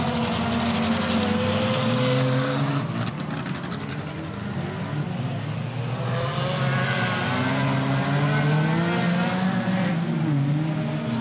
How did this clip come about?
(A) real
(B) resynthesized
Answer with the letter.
A